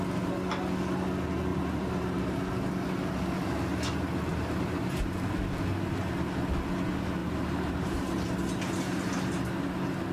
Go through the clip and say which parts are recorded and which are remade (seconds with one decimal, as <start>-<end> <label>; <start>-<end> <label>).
0.0-1.5 recorded; 1.5-2.7 remade; 2.7-4.3 recorded; 4.3-4.9 remade; 4.9-7.2 recorded; 7.2-8.3 remade; 8.3-10.1 recorded